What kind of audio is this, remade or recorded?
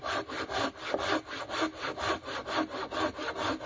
recorded